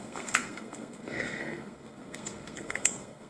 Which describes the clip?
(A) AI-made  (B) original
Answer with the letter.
A